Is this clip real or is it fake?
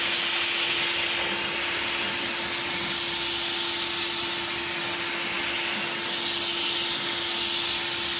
real